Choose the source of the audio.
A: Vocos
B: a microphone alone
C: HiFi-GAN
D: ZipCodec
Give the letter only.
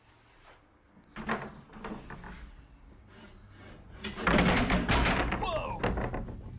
B